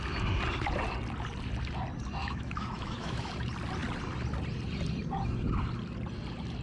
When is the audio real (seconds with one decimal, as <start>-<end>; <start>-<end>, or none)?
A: 0.0-2.2; 3.3-6.6